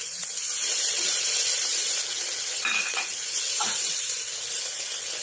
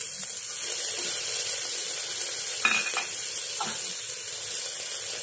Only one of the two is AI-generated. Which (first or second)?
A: first